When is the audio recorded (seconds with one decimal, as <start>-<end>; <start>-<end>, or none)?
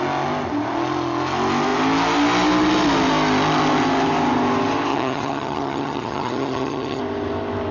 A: 0.0-4.9; 7.0-7.7